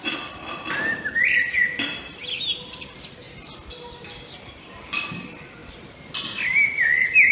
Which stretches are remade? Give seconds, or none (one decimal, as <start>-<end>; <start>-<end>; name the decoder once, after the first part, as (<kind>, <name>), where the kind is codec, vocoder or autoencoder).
none